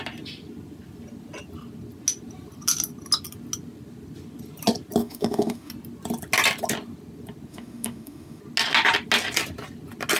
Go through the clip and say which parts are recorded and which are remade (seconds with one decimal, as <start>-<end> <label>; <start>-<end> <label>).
0.0-5.0 recorded; 5.0-5.7 remade; 5.7-7.5 recorded; 7.5-8.4 remade; 8.4-10.2 recorded